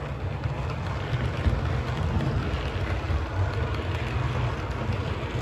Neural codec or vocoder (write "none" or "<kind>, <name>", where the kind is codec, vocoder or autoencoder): none